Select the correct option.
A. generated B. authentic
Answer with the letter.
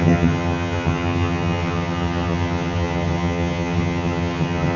A